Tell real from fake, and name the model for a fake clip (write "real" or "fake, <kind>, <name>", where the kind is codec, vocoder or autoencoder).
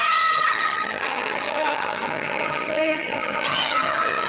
fake, vocoder, HiFi-GAN